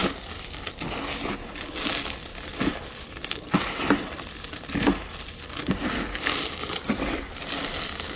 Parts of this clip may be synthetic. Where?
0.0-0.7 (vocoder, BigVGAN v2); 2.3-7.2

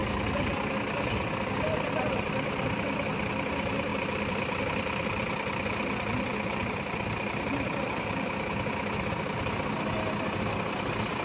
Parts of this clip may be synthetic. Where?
3.9-4.6 (vocoder, BigVGAN v2)

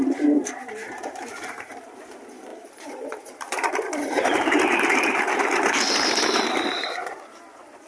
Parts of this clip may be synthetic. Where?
0.0-7.9 (vocoder, BigVGAN v2)

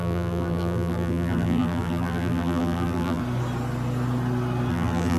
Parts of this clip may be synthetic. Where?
0.0-3.2 (vocoder, BigVGAN v2); 4.7-5.2

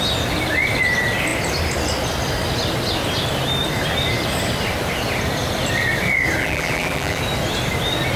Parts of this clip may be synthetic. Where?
6.4-7.2 (vocoder, BigVGAN v2)